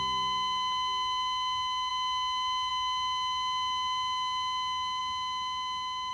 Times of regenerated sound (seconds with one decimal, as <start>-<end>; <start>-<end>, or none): none